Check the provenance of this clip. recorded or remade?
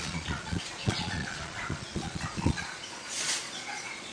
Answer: remade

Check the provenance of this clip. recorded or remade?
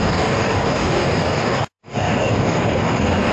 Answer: remade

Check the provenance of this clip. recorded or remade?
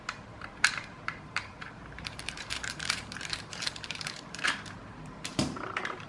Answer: remade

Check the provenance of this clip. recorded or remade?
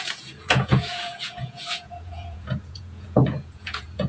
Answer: remade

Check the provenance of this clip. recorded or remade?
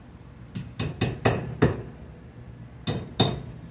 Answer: recorded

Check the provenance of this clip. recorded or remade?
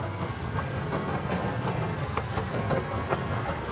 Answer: remade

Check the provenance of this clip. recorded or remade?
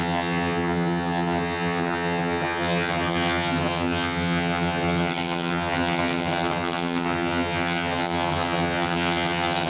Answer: remade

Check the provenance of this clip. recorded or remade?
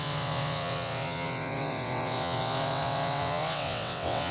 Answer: remade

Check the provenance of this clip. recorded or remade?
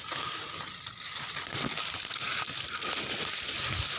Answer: recorded